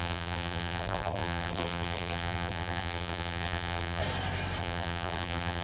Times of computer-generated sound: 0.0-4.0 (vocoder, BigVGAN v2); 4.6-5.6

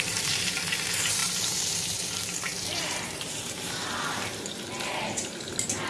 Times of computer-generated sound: 0.0-5.9 (vocoder, BigVGAN v2)